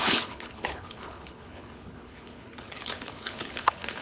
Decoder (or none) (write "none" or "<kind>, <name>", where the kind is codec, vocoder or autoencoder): codec, HILCodec